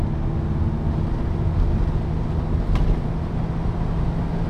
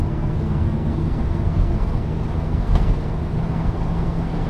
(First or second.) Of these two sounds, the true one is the first